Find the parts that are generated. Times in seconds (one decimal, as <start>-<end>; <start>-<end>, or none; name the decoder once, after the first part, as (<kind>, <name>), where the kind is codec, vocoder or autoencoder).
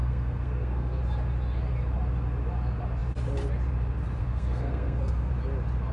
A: 0.0-1.0 (codec, SNAC); 4.2-5.3